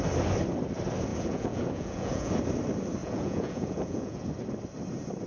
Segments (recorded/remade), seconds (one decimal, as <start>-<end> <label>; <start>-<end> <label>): 0.0-1.1 recorded; 1.1-2.3 remade; 2.3-3.0 recorded; 3.0-4.3 remade; 4.3-5.3 recorded